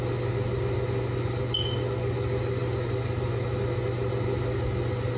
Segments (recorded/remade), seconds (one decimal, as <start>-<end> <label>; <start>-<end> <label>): 0.0-5.2 recorded